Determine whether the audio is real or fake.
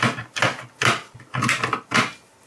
real